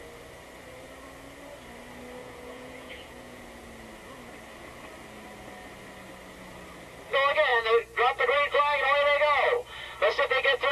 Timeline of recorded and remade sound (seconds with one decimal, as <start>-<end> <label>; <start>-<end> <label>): 0.0-2.2 recorded; 2.2-3.4 remade; 3.4-10.7 recorded